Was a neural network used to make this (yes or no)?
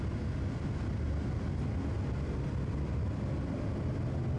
no